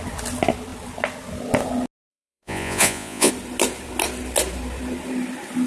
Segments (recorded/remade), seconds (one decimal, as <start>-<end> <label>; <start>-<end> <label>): 0.0-2.1 recorded; 2.1-3.3 remade; 3.3-5.7 recorded